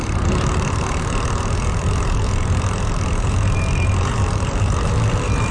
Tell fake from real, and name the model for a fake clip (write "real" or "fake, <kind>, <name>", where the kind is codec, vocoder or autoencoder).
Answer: fake, vocoder, BigVGAN v2